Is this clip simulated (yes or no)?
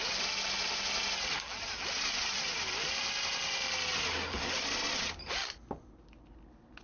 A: no